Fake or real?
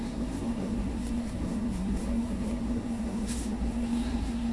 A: fake